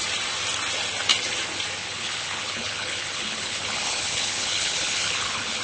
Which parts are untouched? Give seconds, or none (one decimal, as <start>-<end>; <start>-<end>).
0.0-1.8